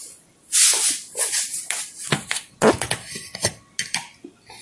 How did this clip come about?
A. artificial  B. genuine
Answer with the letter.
B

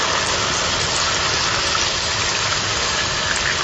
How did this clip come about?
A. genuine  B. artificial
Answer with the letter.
A